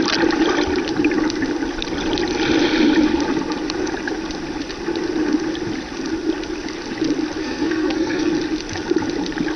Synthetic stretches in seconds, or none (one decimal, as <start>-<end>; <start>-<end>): 7.4-8.3